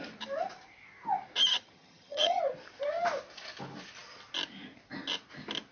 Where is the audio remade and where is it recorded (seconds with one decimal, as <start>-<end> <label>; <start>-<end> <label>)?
0.0-1.5 recorded; 1.5-2.4 remade; 2.4-5.7 recorded